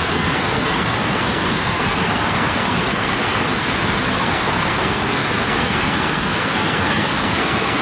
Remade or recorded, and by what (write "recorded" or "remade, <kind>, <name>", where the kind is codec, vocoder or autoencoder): remade, codec, SNAC